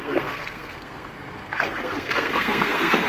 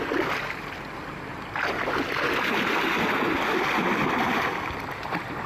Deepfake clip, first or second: first